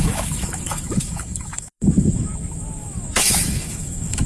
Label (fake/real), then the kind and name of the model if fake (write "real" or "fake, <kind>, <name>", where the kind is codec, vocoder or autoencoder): fake, autoencoder, DAC-VAE